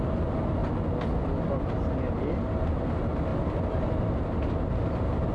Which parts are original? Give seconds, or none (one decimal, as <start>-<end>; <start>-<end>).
0.0-5.3